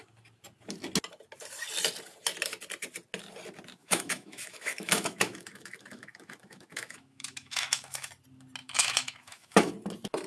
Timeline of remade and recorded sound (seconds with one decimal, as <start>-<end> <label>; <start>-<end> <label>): 0.0-3.8 recorded; 3.8-8.1 remade; 8.1-8.6 recorded; 8.6-9.7 remade; 9.7-10.3 recorded